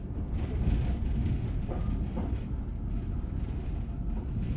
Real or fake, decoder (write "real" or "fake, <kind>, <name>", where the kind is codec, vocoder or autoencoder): real